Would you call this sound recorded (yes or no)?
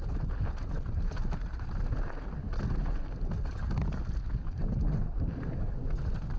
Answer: yes